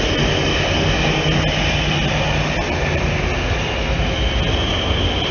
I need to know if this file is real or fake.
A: real